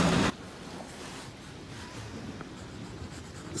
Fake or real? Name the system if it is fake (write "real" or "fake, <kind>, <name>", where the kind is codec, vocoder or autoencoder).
real